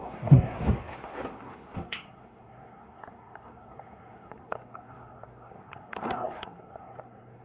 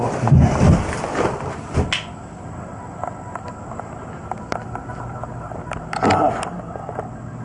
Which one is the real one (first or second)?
second